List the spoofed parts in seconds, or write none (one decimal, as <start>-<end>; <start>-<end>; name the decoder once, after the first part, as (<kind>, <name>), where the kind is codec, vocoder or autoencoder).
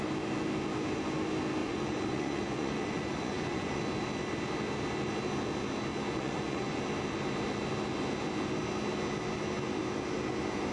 1.6-3.8 (vocoder, Vocos); 5.9-6.8